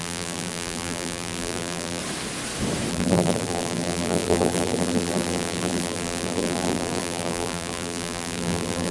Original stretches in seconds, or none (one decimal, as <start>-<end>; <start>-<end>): 2.0-2.9